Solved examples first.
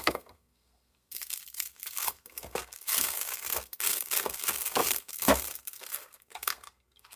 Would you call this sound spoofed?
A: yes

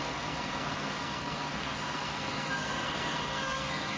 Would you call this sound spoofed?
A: yes